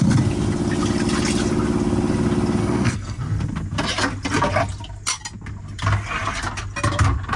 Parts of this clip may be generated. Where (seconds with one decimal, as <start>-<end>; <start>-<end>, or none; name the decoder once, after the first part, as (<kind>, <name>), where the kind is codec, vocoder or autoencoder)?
2.6-3.2 (codec, SNAC)